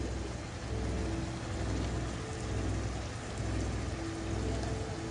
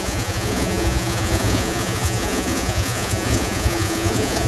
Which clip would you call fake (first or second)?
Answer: second